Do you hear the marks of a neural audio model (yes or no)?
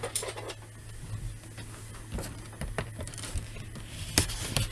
no